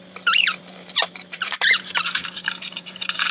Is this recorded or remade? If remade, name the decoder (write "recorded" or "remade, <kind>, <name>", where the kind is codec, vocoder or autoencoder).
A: remade, vocoder, BigVGAN v2